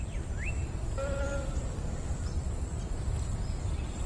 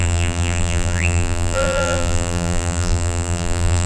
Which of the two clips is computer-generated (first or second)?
second